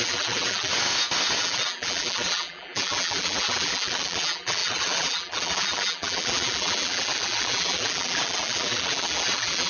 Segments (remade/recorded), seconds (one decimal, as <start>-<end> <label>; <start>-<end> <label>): 0.0-0.7 remade; 0.7-1.4 recorded; 1.4-9.7 remade